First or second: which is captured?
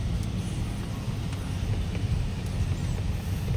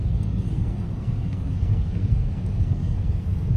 first